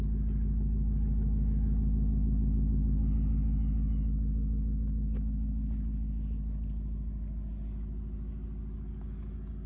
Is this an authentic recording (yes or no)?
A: yes